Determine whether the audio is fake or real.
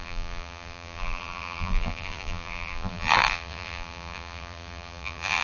fake